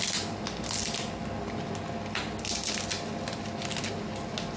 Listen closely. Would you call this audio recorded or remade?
recorded